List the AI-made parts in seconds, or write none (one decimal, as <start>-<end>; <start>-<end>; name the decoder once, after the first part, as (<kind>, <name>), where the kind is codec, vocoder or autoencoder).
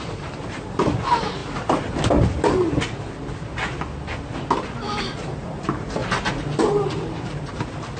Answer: 0.0-1.4 (vocoder, BigVGAN v2); 5.0-6.0; 6.6-8.0